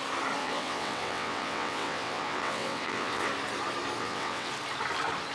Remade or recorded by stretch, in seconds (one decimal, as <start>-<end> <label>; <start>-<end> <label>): 0.0-0.4 recorded; 0.4-3.3 remade; 3.3-4.0 recorded; 4.0-4.5 remade; 4.5-5.3 recorded